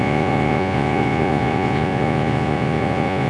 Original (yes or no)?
no